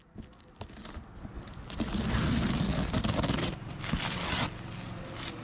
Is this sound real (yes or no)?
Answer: yes